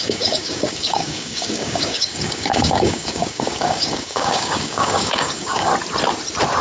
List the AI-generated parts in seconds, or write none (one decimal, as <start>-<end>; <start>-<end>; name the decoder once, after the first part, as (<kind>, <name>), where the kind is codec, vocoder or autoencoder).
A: 0.0-5.7 (codec, DAC)